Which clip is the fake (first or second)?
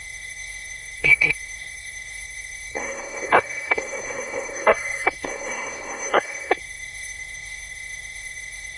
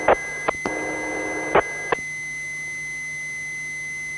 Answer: first